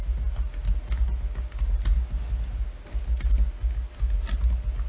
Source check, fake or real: real